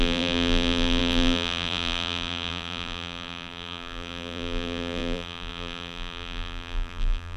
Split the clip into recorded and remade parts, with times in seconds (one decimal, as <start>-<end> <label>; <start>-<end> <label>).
0.0-7.4 remade